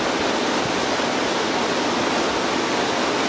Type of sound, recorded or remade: recorded